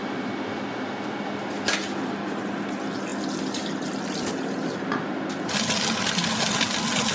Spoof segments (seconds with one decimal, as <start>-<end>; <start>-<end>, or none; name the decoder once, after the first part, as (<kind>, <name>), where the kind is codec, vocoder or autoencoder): none